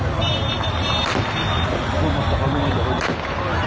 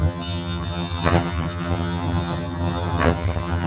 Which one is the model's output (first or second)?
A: second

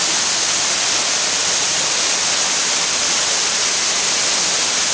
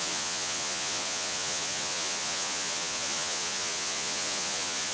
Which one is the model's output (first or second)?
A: second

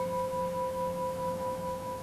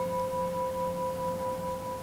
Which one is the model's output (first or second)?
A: first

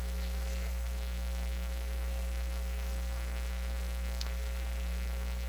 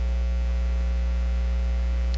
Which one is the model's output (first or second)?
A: first